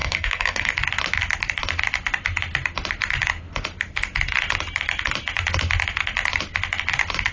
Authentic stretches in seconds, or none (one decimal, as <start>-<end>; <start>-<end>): 0.7-7.3